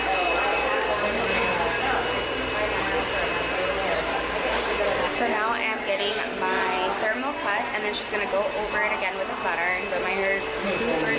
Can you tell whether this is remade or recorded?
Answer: recorded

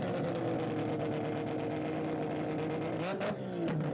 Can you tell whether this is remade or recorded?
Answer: recorded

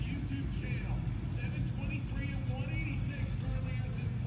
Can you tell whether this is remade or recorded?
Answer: recorded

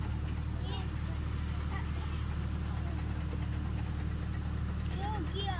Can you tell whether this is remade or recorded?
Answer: recorded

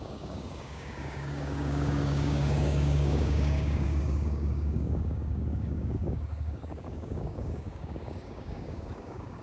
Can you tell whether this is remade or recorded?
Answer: remade